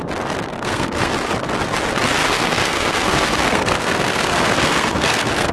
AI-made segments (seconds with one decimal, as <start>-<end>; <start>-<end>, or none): 0.5-1.1; 2.2-5.5